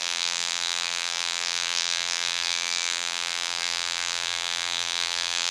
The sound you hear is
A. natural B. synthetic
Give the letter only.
B